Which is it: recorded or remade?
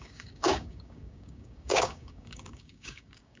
remade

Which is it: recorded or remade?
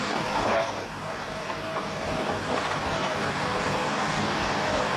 remade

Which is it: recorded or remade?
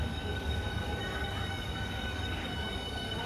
remade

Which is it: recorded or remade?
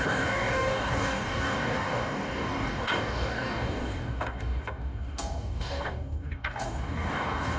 remade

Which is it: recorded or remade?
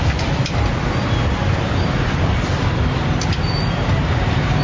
recorded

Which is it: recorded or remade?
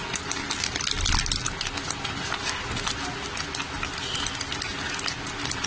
recorded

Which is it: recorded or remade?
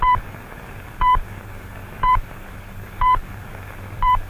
remade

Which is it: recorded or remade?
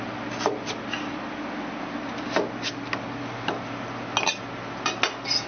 recorded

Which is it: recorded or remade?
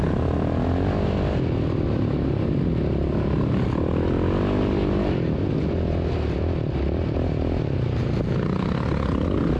recorded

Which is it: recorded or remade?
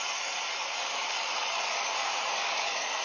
remade